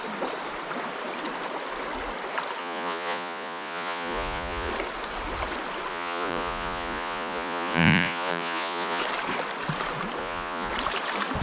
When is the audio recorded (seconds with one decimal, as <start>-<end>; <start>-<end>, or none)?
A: 0.0-2.6; 4.7-5.9; 9.0-10.2; 10.7-11.4